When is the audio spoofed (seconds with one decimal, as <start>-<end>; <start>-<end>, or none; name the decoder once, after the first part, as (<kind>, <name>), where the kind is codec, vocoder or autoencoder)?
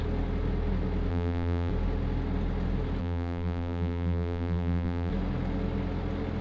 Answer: 1.1-1.7 (vocoder, BigVGAN v2); 3.0-5.1